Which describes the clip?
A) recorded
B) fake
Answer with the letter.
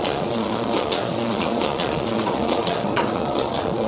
B